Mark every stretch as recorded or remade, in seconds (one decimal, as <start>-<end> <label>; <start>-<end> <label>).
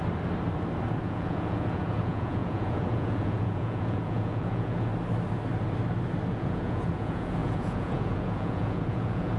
0.0-1.0 recorded; 1.0-4.9 remade; 4.9-6.3 recorded; 6.3-9.4 remade